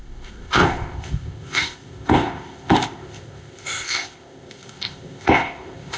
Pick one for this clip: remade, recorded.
remade